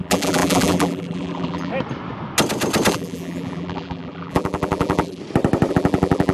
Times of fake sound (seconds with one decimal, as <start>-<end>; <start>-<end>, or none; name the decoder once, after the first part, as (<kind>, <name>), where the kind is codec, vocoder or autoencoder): 0.0-1.7 (vocoder, BigVGAN v2); 2.9-5.2; 5.7-6.3